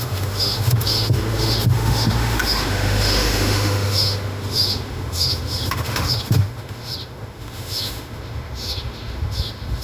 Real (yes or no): no